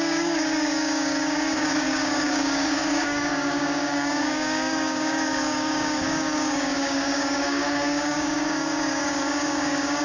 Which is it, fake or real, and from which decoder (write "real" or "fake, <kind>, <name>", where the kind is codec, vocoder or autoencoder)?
fake, codec, DAC